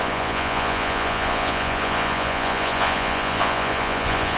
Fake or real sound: fake